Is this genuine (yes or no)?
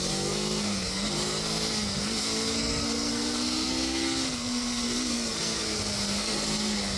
no